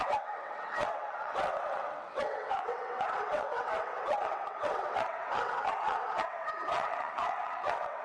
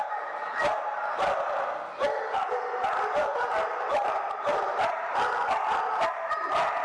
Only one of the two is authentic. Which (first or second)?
second